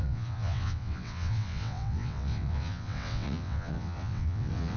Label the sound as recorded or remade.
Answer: remade